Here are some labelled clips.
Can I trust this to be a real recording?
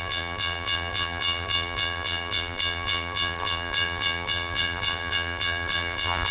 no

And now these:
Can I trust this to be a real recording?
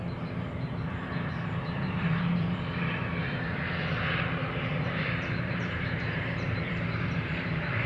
no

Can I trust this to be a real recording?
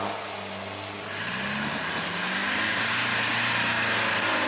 yes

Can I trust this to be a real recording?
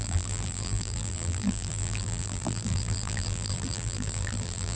no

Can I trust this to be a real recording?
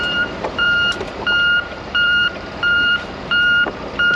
no